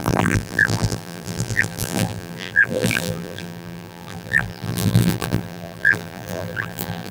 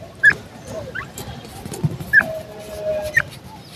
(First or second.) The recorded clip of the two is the second